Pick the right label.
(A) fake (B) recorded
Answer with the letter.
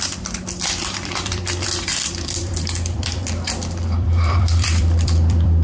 A